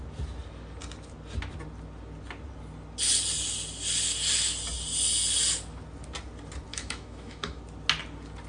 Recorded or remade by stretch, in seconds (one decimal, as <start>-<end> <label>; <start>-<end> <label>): 0.0-6.7 recorded; 6.7-7.6 remade; 7.6-8.5 recorded